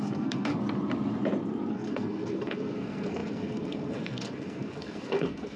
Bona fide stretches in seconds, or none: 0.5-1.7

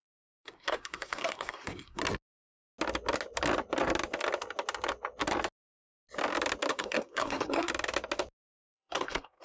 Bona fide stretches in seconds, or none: 2.0-6.7; 7.7-8.7

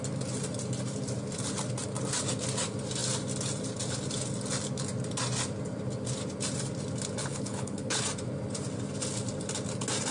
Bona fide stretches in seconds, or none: 0.0-7.2; 8.0-10.1